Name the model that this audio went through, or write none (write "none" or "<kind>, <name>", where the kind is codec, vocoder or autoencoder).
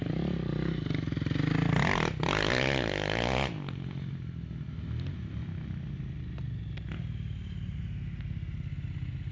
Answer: none